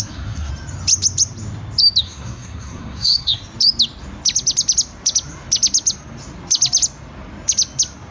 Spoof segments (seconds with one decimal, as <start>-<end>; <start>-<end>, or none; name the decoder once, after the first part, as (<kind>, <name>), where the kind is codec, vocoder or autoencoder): 0.0-0.5 (codec, SNAC); 2.0-3.4